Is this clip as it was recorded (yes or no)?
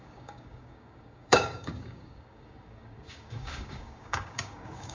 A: no